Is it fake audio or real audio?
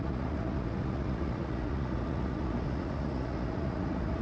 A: fake